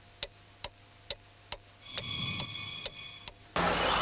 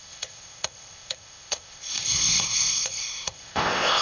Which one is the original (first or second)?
first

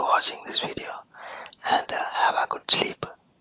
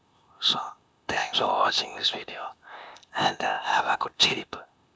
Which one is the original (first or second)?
first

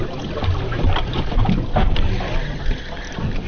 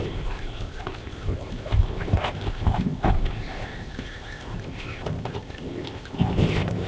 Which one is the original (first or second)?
first